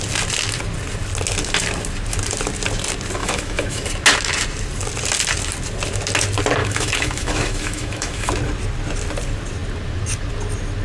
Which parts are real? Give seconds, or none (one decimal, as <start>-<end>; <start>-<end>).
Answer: 0.0-3.2; 3.8-6.6; 8.3-10.8